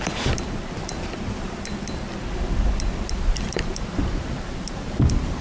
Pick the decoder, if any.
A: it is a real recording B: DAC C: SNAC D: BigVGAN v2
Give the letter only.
A